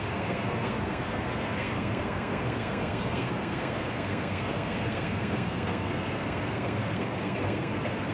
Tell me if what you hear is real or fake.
fake